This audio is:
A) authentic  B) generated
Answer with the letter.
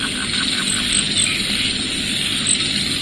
A